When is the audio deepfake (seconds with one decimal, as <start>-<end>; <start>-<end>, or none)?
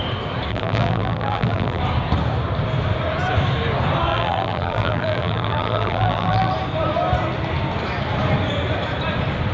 0.5-1.8; 4.1-6.5